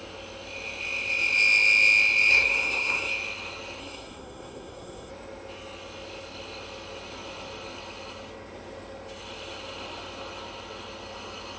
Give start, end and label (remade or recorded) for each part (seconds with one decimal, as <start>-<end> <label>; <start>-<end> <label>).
0.0-2.3 recorded; 2.3-3.1 remade; 3.1-3.8 recorded; 3.8-5.1 remade; 5.1-11.6 recorded